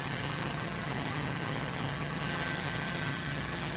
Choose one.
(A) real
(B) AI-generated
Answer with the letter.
B